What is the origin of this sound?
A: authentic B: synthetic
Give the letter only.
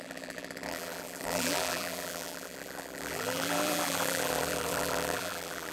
B